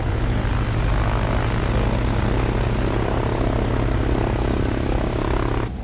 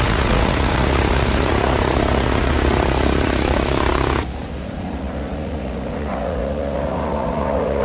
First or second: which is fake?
second